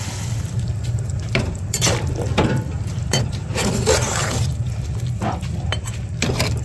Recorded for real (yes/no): no